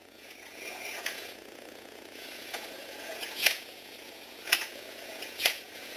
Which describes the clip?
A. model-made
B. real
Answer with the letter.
A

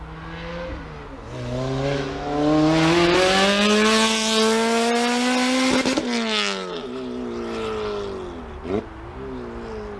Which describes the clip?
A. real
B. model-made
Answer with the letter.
A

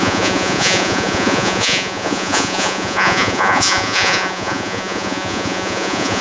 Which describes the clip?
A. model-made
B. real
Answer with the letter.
A